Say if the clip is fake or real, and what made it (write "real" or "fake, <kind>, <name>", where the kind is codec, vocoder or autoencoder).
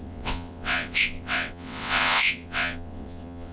fake, vocoder, WaveNeXt